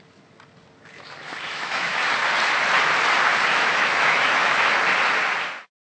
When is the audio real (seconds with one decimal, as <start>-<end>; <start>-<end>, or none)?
0.0-1.2; 2.0-3.5; 4.8-5.9